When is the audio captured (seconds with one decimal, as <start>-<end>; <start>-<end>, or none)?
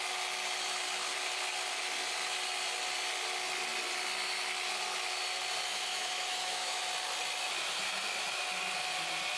0.0-5.7; 6.8-9.4